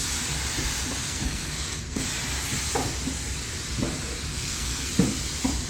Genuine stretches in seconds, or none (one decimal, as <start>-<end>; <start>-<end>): 0.0-1.0; 2.0-4.3; 4.9-5.7